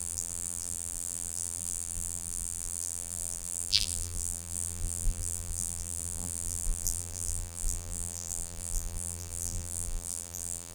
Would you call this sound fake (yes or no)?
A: yes